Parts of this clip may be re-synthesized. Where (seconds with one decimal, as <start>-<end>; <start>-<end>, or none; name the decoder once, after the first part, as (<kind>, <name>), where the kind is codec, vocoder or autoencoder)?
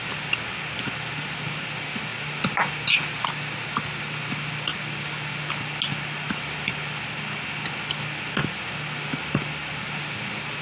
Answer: none